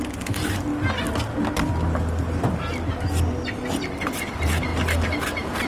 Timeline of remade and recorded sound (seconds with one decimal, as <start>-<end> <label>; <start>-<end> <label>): 0.0-0.7 remade; 0.7-3.7 recorded; 3.7-4.7 remade; 4.7-5.7 recorded